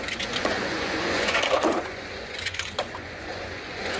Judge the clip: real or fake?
fake